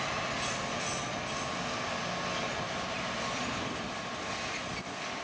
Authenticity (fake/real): real